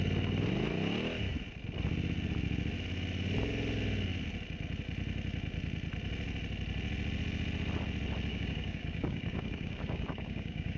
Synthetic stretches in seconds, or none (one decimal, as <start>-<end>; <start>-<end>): 8.3-10.8